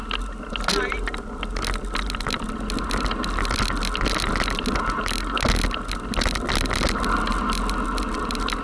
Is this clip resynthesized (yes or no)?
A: no